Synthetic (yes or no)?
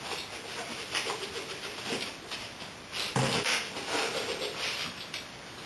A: no